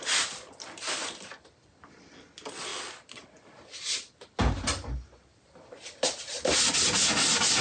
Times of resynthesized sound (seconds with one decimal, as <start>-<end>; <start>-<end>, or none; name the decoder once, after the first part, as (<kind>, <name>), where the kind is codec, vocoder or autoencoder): 5.3-6.6 (vocoder, BigVGAN v2)